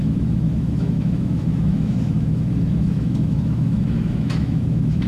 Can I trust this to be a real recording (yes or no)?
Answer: no